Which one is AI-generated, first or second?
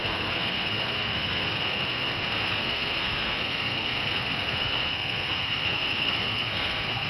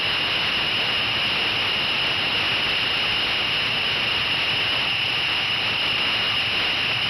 first